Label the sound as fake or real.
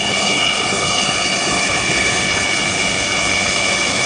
fake